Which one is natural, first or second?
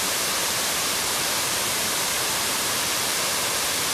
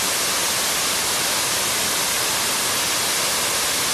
second